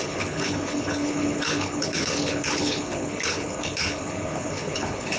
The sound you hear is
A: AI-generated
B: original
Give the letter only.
A